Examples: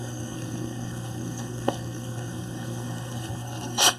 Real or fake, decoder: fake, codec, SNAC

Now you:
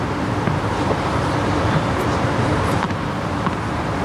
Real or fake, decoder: fake, vocoder, BigVGAN v2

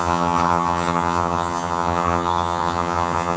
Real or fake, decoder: fake, vocoder, HiFi-GAN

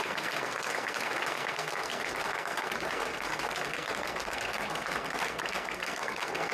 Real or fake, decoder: fake, codec, SNAC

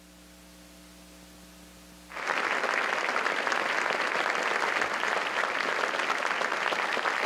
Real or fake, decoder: real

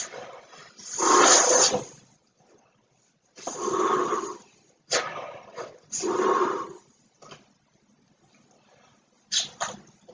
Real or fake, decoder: real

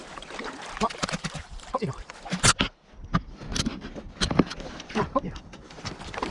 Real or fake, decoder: real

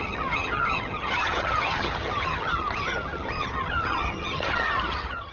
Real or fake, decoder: fake, vocoder, HiFi-GAN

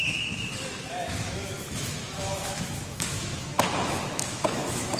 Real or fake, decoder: fake, autoencoder, DAC-VAE